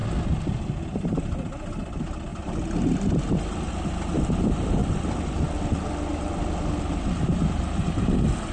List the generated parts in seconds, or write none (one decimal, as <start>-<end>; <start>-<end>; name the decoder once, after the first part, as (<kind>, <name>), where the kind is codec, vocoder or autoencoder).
none